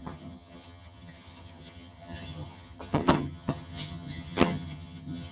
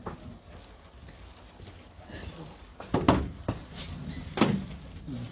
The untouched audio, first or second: second